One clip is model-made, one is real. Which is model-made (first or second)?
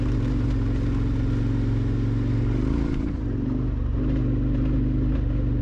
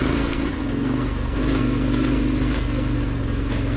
second